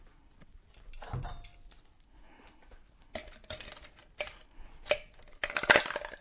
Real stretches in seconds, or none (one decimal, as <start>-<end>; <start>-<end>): 0.0-6.2